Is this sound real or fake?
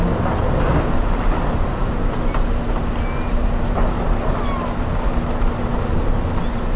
real